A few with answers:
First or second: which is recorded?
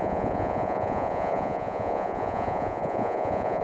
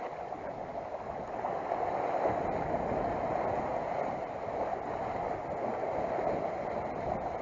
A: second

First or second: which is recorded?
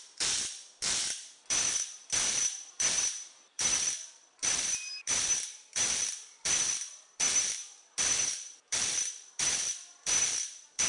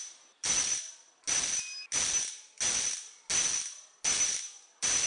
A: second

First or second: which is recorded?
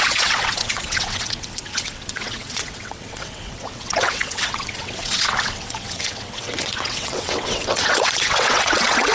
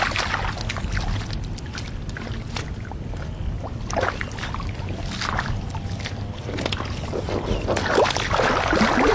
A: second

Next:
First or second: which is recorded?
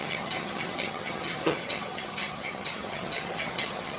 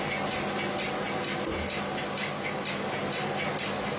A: second